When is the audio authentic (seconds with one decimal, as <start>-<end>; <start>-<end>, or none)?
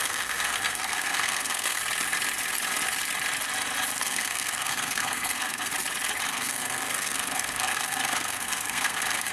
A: 1.8-4.0; 5.7-6.3